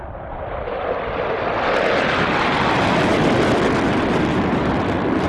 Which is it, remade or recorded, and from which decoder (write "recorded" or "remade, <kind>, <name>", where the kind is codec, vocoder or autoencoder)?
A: recorded